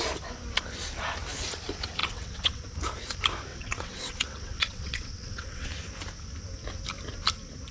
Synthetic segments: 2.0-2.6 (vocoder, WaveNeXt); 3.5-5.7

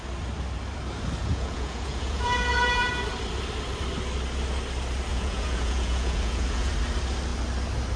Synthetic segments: 1.2-2.9 (vocoder, Vocos); 5.1-6.7

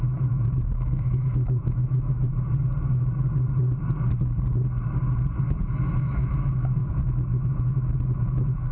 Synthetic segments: 0.0-2.3 (autoencoder, DAC-VAE); 5.8-8.7

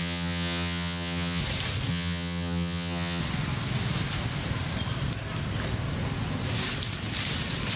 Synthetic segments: 0.0-1.4 (vocoder, HiFi-GAN); 1.9-3.2

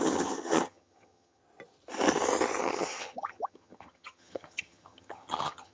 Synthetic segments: 0.0-1.4 (vocoder, HiFi-GAN); 2.6-5.7

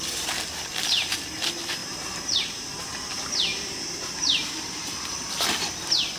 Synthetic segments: 1.8-2.4 (vocoder, BigVGAN v2); 3.5-5.3

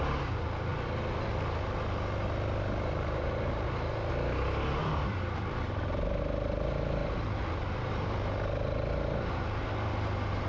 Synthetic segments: 4.8-6.2 (vocoder, BigVGAN v2); 7.0-7.6

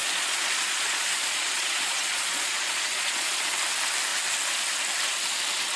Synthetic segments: 0.0-3.5 (vocoder, Vocos)